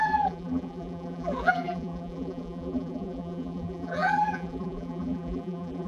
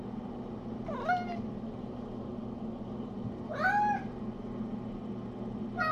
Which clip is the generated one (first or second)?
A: first